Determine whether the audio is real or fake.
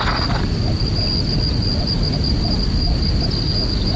real